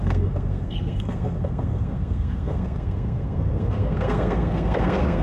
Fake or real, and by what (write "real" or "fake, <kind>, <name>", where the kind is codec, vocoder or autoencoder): fake, codec, SNAC